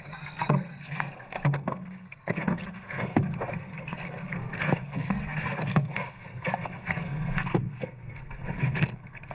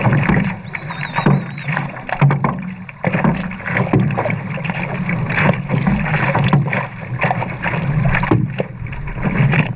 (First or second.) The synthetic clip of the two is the first